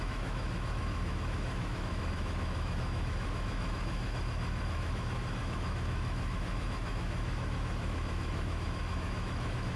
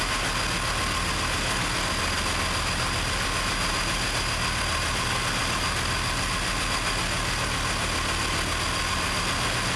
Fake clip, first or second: first